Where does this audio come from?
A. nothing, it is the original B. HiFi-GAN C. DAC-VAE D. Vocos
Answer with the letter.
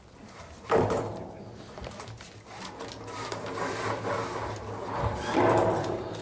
A